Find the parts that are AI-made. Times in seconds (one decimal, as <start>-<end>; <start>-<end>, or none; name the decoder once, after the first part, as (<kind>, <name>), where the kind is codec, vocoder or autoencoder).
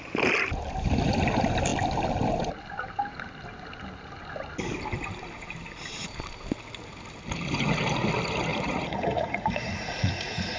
8.5-10.6 (vocoder, Vocos)